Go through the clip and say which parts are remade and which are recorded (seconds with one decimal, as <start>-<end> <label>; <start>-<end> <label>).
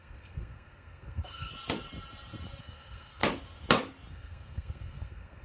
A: 0.0-1.5 remade; 1.5-2.6 recorded; 2.6-3.2 remade; 3.2-4.1 recorded; 4.1-5.4 remade